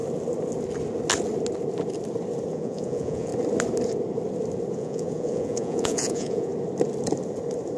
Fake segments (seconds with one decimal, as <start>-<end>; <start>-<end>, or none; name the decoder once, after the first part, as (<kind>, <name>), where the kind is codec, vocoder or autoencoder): 2.5-3.3 (vocoder, Vocos); 4.7-6.5